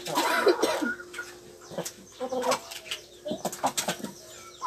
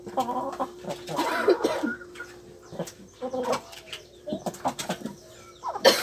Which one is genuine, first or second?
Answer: first